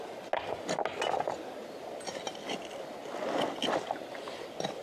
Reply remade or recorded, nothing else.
recorded